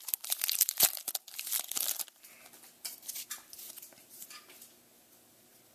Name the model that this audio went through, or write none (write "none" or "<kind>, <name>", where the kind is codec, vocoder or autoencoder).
none